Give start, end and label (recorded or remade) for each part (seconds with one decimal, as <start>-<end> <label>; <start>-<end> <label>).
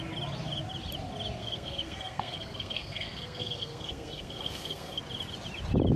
0.0-1.4 recorded; 1.4-5.0 remade; 5.0-6.0 recorded